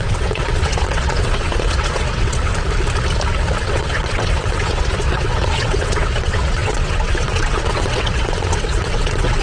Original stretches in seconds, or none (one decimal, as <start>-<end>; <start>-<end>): 2.5-3.6